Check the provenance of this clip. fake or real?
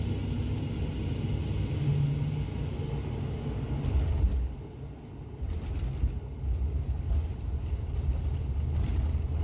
real